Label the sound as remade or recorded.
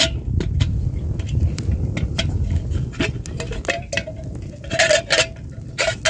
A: recorded